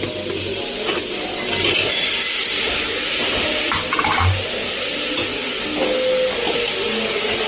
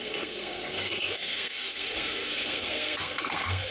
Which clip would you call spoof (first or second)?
second